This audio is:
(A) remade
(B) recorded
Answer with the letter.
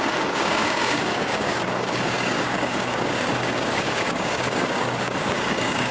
A